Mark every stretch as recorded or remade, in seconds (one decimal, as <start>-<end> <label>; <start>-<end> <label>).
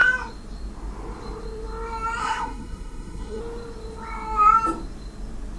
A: 0.0-2.2 recorded; 2.2-3.4 remade; 3.4-5.6 recorded